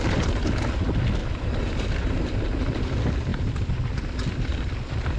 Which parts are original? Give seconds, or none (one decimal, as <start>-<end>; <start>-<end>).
0.0-1.2; 2.9-3.3; 4.6-5.2